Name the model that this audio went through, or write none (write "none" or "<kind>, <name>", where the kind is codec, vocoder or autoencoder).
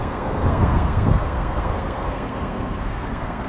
codec, SNAC